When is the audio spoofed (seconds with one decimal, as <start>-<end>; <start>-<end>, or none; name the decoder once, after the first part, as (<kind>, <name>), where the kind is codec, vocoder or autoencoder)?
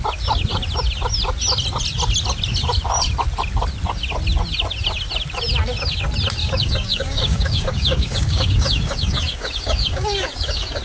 6.4-10.8 (codec, DAC)